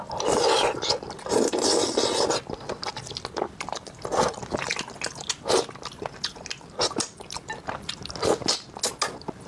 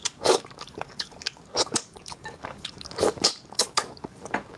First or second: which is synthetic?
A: second